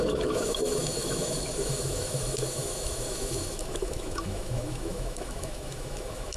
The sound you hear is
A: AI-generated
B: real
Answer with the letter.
A